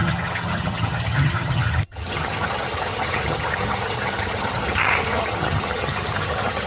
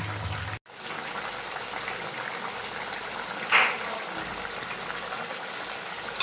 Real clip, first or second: second